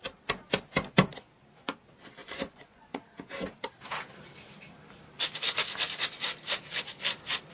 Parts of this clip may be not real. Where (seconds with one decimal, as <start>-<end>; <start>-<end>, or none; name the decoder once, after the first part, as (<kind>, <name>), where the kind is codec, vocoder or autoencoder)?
2.2-3.0 (vocoder, Vocos)